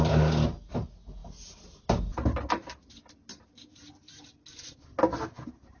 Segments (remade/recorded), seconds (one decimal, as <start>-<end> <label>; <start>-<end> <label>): 0.0-5.8 recorded